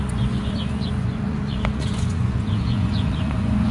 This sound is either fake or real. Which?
fake